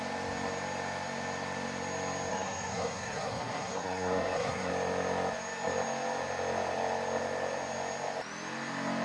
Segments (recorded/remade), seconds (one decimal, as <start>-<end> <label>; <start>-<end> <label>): 0.0-2.3 recorded; 2.3-4.7 remade; 4.7-9.0 recorded